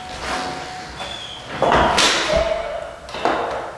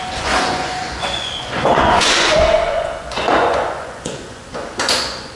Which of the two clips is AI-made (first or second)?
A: second